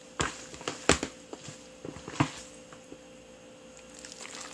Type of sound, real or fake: real